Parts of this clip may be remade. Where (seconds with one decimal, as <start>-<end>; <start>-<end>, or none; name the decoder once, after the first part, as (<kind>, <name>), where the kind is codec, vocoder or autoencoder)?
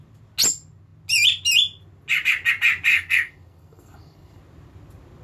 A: 2.9-4.4 (codec, SNAC)